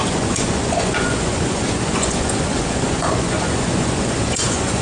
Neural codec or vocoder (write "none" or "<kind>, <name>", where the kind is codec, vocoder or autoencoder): vocoder, Vocos